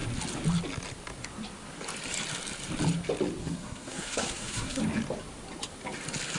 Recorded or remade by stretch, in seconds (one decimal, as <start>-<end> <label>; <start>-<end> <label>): 0.0-3.4 recorded; 3.4-4.8 remade; 4.8-6.4 recorded